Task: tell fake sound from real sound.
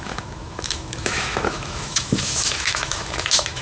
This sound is fake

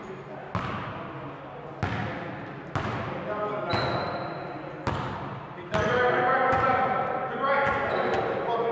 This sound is real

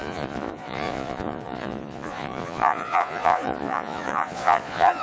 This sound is fake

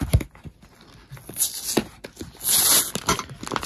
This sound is real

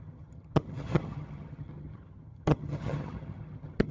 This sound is fake